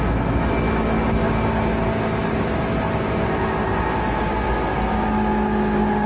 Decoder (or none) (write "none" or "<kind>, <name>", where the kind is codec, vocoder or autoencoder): none